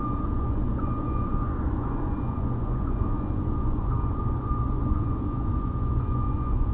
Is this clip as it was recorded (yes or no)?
no